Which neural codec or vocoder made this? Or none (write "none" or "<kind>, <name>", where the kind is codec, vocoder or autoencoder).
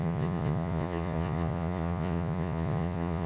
vocoder, Vocos